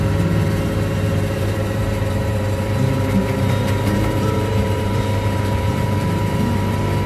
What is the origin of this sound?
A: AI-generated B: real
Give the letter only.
A